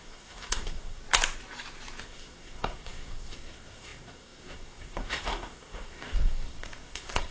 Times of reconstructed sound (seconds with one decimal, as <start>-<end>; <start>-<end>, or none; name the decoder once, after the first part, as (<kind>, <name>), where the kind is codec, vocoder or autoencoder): 0.0-1.0 (codec, SNAC); 2.0-7.3